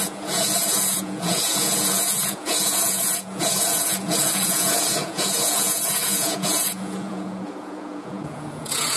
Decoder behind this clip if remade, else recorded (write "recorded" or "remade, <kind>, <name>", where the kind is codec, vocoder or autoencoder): remade, vocoder, Vocos